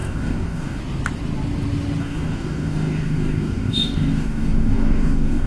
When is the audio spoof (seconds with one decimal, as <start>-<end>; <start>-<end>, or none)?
0.0-0.8; 2.0-5.5